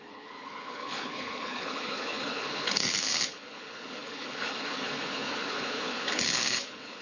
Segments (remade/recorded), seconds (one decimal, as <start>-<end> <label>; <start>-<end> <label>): 0.0-7.0 remade